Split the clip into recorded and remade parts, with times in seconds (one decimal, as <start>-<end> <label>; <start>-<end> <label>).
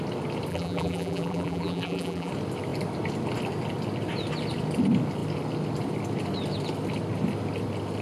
0.0-0.5 recorded; 0.5-2.3 remade; 2.3-8.0 recorded